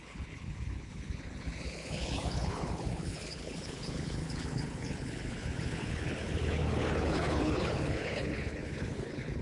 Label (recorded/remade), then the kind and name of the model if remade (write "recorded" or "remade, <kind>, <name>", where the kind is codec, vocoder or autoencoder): remade, codec, HILCodec